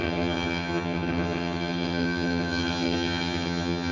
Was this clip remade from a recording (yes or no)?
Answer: yes